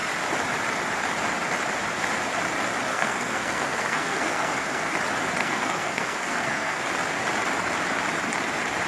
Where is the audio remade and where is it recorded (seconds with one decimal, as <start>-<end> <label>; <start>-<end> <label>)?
0.0-2.9 recorded; 2.9-4.9 remade; 4.9-5.4 recorded; 5.4-6.8 remade; 6.8-8.9 recorded

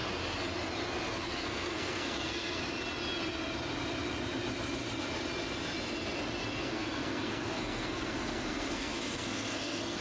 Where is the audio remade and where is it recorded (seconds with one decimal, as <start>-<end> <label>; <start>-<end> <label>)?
0.0-1.1 recorded; 1.1-2.6 remade; 2.6-6.5 recorded; 6.5-10.0 remade

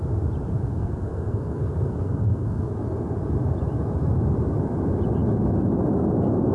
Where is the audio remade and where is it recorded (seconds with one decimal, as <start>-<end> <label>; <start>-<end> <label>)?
0.0-0.7 recorded; 0.7-2.7 remade; 2.7-6.5 recorded

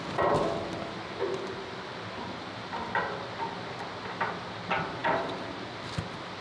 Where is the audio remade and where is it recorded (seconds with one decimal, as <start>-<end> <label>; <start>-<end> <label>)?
0.0-6.4 recorded

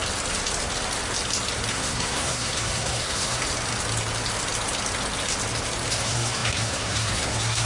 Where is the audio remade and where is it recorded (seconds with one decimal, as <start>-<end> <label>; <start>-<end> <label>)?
0.0-1.7 recorded; 1.7-3.4 remade; 3.4-5.9 recorded; 5.9-7.7 remade

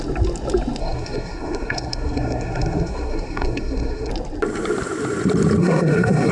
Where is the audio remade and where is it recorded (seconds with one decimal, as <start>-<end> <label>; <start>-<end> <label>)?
0.0-0.8 recorded; 0.8-4.1 remade; 4.1-5.6 recorded; 5.6-6.3 remade

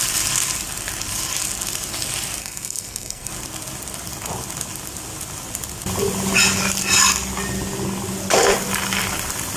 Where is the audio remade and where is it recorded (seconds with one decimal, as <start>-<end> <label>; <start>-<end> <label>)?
0.0-2.4 recorded; 2.4-3.3 remade; 3.3-9.6 recorded